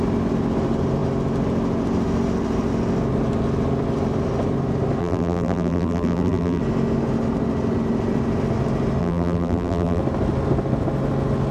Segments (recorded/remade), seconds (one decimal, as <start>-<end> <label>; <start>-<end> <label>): 0.0-5.0 recorded; 5.0-6.6 remade; 6.6-9.0 recorded; 9.0-10.0 remade; 10.0-11.5 recorded